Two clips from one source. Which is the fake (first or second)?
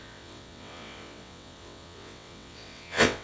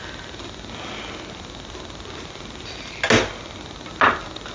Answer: first